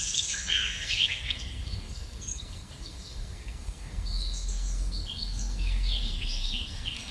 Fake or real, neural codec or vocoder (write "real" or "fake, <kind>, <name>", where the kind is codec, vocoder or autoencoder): fake, codec, SNAC